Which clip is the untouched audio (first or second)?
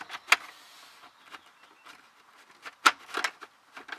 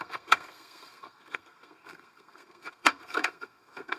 first